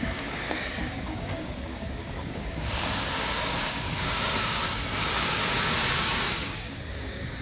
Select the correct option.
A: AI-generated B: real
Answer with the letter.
A